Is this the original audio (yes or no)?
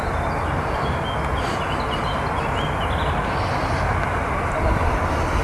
yes